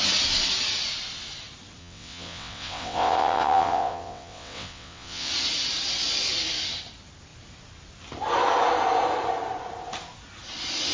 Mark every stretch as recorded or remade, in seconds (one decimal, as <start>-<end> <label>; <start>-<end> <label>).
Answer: 0.0-1.8 recorded; 1.8-5.3 remade; 5.3-10.9 recorded